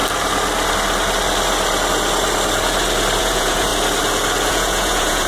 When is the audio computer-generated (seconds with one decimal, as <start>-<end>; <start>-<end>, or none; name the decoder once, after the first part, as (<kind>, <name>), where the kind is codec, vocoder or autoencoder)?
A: 3.2-3.7 (vocoder, Vocos); 4.5-5.3